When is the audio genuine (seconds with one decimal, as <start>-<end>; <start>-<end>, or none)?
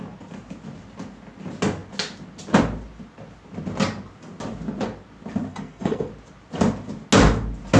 0.0-5.5; 6.1-7.8